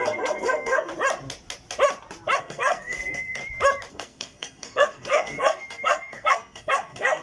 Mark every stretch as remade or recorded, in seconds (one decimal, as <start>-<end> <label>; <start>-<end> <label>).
0.0-0.9 remade; 0.9-2.4 recorded; 2.4-3.4 remade; 3.4-3.9 recorded; 3.9-7.2 remade